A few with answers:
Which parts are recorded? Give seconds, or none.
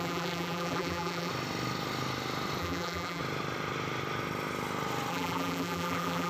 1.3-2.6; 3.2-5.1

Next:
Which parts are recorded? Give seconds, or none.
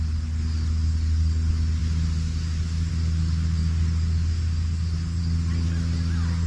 0.0-6.5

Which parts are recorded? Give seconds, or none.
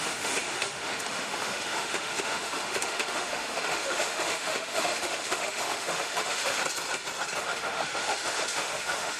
6.6-7.4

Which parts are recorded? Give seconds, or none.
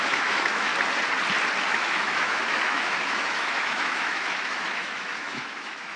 0.7-1.7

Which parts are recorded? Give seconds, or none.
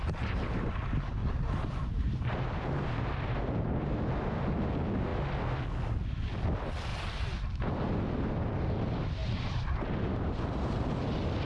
0.0-1.2; 3.6-9.2; 10.9-11.4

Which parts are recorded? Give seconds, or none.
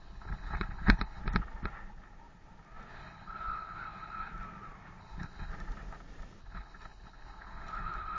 1.2-2.9; 4.3-5.0; 5.5-6.4